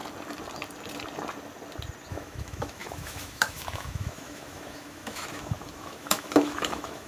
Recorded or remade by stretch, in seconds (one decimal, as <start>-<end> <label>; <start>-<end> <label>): 0.0-2.1 recorded; 2.1-7.1 remade